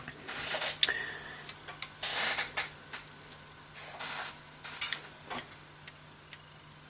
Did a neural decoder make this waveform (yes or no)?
no